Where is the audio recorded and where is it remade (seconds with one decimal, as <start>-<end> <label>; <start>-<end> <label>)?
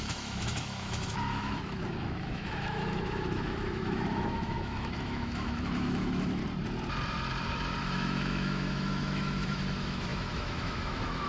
0.0-6.4 remade; 6.4-7.8 recorded; 7.8-11.3 remade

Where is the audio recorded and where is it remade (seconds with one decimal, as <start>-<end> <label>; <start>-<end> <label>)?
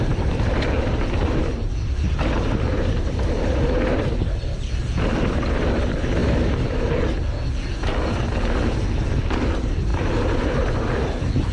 0.0-11.5 recorded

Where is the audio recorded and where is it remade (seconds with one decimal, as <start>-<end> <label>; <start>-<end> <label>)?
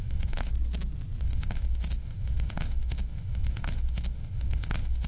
0.0-0.5 remade; 0.5-1.2 recorded; 1.2-5.1 remade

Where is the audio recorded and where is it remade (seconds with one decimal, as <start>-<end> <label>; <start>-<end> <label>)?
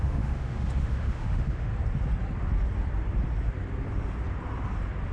0.0-1.7 remade; 1.7-5.1 recorded